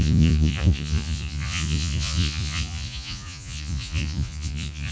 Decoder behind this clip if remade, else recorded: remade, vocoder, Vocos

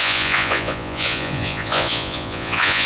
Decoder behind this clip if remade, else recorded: remade, vocoder, Vocos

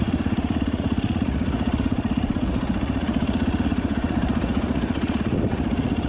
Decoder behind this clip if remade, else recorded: remade, vocoder, Vocos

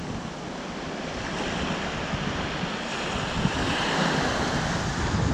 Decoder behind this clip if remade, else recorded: recorded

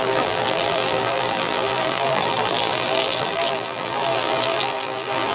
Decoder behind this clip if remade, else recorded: remade, vocoder, BigVGAN v2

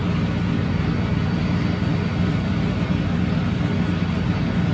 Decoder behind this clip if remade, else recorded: recorded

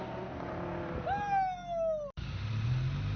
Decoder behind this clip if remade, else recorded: recorded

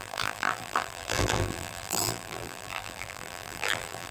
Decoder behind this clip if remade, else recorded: remade, vocoder, BigVGAN v2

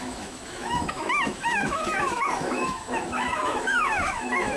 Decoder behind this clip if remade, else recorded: remade, autoencoder, DAC-VAE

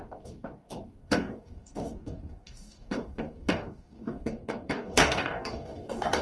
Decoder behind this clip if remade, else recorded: remade, codec, DAC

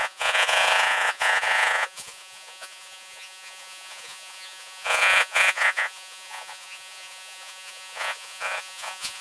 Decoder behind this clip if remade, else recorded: remade, vocoder, Vocos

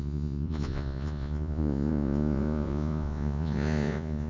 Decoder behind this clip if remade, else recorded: remade, vocoder, Vocos